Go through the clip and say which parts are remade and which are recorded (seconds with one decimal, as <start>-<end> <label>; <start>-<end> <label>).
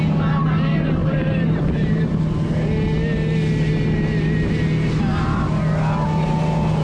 0.0-1.0 recorded; 1.0-2.2 remade; 2.2-6.8 recorded